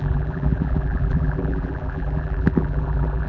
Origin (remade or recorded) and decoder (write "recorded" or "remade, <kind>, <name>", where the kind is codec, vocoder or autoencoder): remade, vocoder, BigVGAN v2